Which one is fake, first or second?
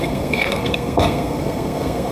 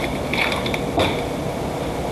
first